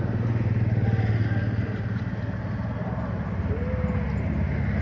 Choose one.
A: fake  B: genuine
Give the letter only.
B